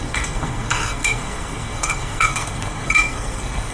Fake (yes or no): yes